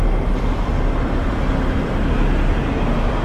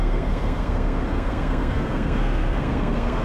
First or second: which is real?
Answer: first